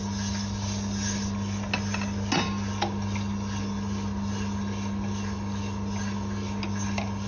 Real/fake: real